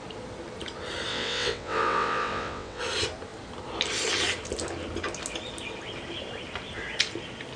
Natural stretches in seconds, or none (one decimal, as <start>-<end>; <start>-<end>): 0.0-1.1; 2.8-7.6